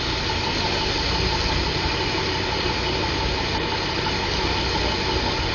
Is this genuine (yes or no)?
yes